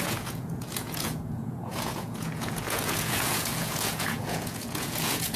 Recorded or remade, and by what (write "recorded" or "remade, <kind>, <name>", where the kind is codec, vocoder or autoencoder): remade, vocoder, Vocos